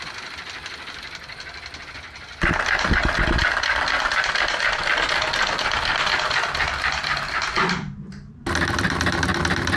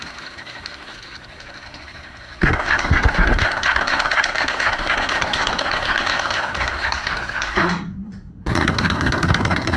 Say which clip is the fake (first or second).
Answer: second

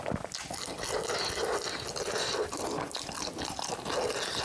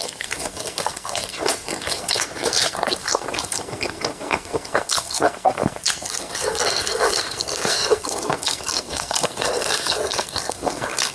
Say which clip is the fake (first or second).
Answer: second